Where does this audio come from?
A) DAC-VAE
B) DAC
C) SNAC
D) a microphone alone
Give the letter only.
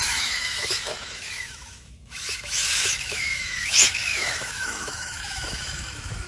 A